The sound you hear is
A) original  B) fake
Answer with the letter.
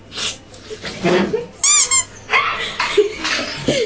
A